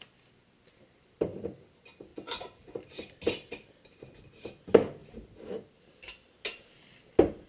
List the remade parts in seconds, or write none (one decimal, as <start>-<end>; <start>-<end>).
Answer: 1.0-1.6; 2.1-3.2; 5.0-6.3